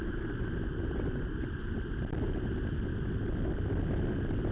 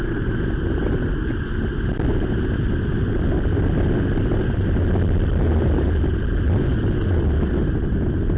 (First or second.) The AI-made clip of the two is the first